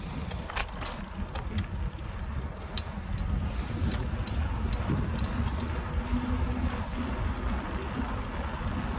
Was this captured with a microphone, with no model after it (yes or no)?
yes